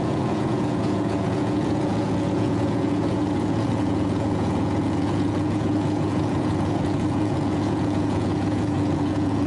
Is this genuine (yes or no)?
no